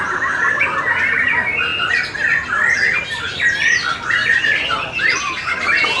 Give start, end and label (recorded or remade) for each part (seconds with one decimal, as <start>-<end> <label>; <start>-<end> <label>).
0.0-6.0 recorded